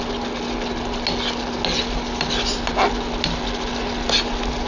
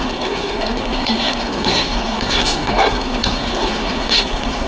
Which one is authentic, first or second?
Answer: first